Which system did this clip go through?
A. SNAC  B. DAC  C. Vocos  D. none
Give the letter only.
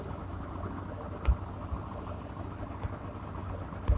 D